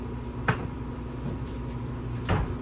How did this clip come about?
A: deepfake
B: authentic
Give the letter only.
B